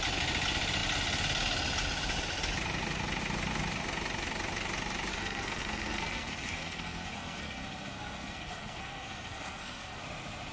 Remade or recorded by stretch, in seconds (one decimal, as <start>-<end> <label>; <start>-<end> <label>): 0.0-5.1 recorded; 5.1-10.0 remade; 10.0-10.5 recorded